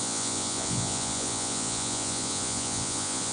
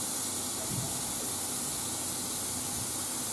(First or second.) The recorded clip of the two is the second